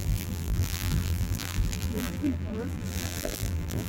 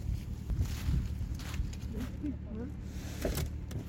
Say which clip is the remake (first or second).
first